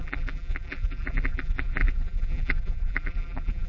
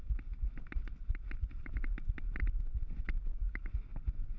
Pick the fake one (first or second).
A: first